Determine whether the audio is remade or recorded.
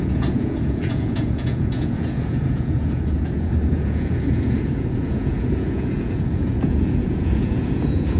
remade